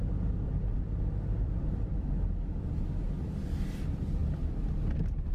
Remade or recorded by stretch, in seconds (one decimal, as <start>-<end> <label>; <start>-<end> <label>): 0.0-5.3 recorded